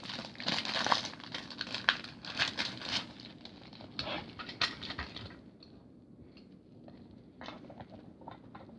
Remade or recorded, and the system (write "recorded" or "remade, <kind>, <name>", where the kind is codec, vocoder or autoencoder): recorded